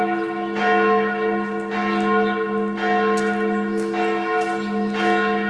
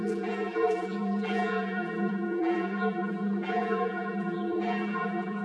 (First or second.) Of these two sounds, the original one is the first